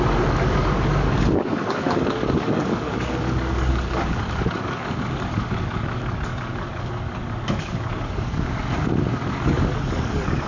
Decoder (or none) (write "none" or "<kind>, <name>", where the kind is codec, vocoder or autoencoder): codec, DAC